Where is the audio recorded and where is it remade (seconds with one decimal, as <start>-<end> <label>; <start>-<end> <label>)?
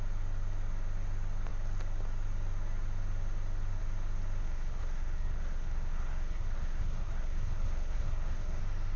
0.0-4.4 recorded; 4.4-8.6 remade; 8.6-9.0 recorded